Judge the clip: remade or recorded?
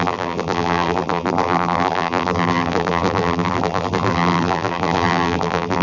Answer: remade